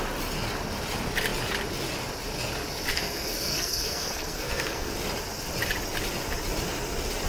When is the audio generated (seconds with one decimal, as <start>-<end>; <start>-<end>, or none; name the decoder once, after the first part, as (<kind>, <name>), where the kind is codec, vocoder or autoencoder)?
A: 2.9-4.9 (codec, SNAC)